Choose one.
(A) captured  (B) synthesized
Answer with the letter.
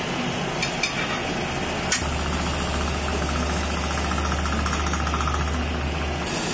A